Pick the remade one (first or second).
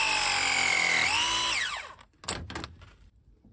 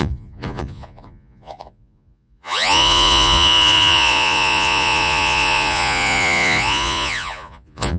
second